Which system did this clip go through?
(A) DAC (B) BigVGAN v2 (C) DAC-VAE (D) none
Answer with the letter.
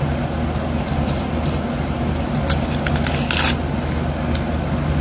D